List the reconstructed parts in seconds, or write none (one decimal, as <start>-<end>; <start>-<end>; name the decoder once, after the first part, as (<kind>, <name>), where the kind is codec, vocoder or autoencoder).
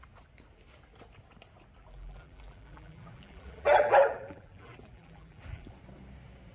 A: 1.8-5.7 (vocoder, BigVGAN v2)